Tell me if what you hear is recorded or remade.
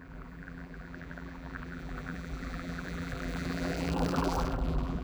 remade